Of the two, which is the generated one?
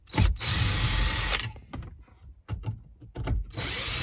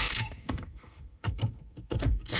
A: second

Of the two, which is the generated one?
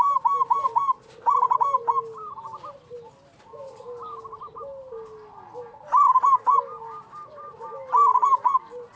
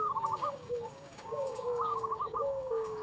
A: second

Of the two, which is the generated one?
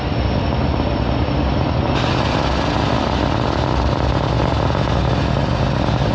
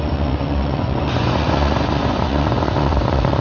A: second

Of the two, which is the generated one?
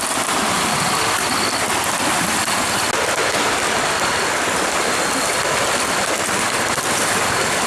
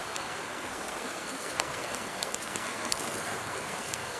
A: second